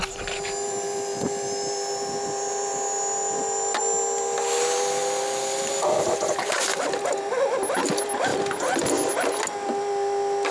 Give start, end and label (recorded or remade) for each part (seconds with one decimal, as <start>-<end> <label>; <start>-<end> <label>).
0.0-10.5 recorded